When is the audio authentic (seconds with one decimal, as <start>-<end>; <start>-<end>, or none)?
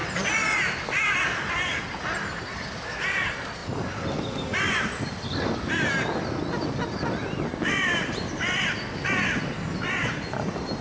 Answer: 0.0-10.8